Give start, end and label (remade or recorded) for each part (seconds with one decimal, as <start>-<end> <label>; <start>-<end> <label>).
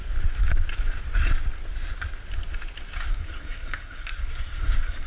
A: 0.0-3.1 recorded; 3.1-5.1 remade